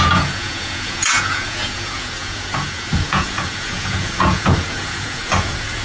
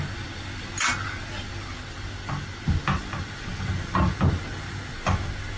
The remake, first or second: first